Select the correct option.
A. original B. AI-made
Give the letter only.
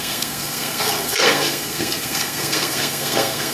B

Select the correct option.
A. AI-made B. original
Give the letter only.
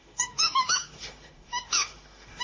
A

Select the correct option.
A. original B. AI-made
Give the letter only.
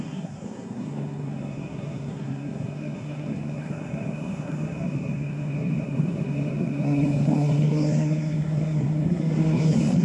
B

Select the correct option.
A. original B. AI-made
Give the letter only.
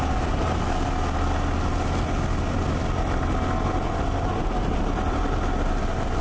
A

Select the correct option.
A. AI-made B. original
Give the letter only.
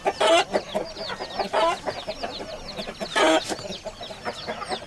B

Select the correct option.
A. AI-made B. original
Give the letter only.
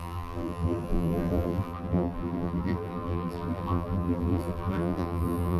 A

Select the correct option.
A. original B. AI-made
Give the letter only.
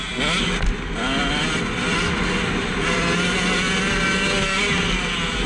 A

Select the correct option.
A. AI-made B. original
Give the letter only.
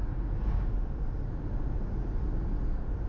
B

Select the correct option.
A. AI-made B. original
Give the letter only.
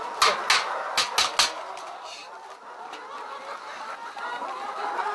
B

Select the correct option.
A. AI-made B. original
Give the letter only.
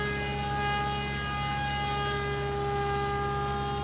B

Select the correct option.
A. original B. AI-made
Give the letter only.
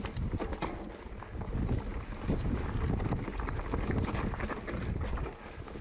A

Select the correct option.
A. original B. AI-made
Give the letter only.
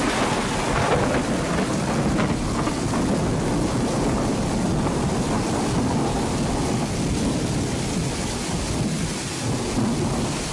A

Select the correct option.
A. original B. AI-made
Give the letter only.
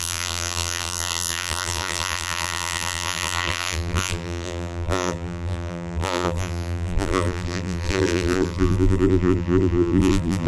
B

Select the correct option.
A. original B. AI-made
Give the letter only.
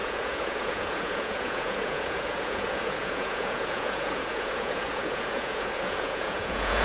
B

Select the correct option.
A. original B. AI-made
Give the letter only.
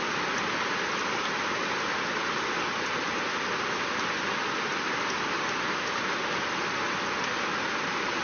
A